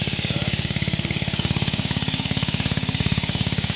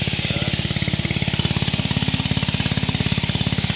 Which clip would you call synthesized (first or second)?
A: first